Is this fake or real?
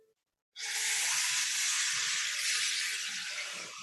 real